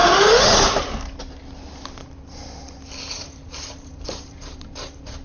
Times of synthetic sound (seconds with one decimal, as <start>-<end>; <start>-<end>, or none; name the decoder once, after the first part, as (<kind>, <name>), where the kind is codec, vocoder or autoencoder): 3.1-5.2 (vocoder, BigVGAN v2)